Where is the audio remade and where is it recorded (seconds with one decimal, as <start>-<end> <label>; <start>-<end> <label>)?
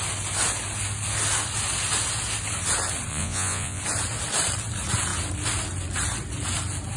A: 0.0-3.1 recorded; 3.1-3.8 remade; 3.8-7.0 recorded